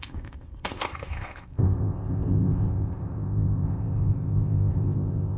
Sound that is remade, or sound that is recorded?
remade